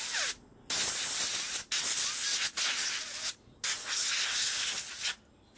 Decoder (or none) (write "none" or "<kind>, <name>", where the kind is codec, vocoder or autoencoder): none